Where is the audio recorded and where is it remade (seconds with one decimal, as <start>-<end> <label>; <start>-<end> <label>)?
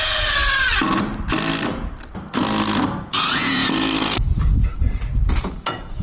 0.0-0.4 remade; 0.4-3.1 recorded; 3.1-4.7 remade; 4.7-5.3 recorded; 5.3-6.0 remade